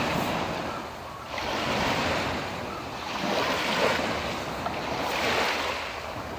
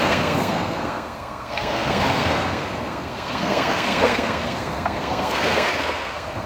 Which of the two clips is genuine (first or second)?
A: first